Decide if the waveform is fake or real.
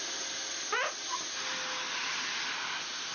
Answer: real